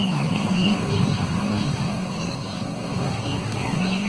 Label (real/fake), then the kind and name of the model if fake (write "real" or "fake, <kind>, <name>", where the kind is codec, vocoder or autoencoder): fake, codec, SNAC